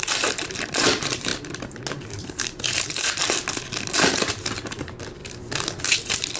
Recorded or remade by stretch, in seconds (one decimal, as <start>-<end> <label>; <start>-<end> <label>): 0.0-1.3 remade; 1.3-2.2 recorded; 2.2-3.2 remade; 3.2-3.9 recorded; 3.9-5.2 remade; 5.2-5.8 recorded; 5.8-6.4 remade